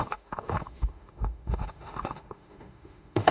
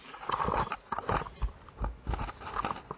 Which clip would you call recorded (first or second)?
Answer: second